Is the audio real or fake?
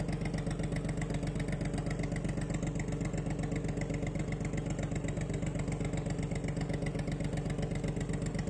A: real